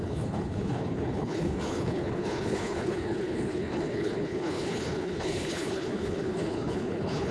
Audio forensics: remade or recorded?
remade